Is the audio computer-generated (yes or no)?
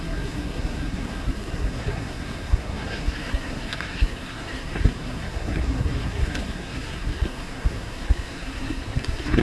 yes